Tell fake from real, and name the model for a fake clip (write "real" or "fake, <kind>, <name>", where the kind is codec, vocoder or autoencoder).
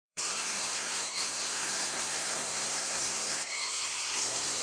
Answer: fake, codec, SNAC